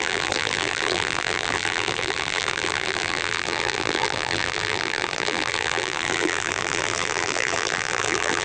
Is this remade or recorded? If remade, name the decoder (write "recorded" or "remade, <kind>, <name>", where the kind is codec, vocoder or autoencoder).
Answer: remade, vocoder, BigVGAN v2